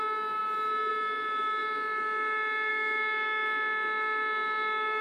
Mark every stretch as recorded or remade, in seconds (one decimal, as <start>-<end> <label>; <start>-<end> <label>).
0.0-5.0 recorded